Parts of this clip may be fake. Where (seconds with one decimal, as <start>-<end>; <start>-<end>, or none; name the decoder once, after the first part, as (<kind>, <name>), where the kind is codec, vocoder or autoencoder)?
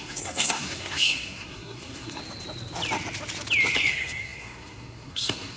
0.0-2.2 (codec, SNAC); 3.9-5.6